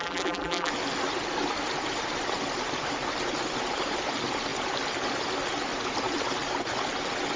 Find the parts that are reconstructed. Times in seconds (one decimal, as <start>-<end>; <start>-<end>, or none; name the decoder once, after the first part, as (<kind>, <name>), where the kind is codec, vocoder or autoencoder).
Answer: 0.0-0.7 (vocoder, BigVGAN v2)